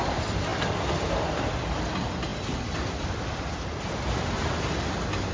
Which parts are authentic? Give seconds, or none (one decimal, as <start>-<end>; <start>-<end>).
0.0-5.3